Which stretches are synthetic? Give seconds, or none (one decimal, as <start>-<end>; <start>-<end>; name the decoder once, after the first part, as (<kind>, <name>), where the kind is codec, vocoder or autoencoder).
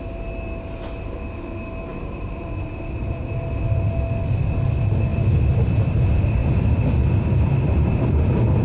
1.9-3.3 (vocoder, BigVGAN v2); 5.1-5.7; 6.4-6.9